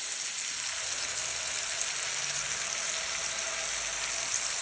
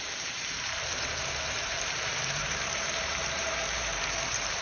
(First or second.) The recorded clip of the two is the first